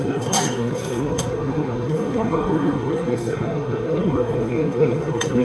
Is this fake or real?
fake